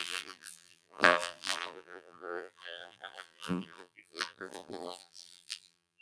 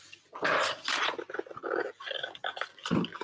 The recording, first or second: second